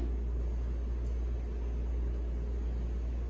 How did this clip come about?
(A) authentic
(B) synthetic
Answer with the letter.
A